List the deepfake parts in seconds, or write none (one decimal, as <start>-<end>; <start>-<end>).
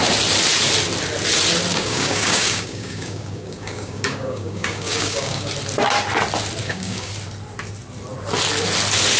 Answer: 1.7-5.5; 6.6-7.1